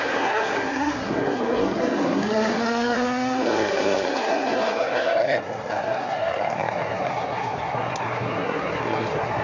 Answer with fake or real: fake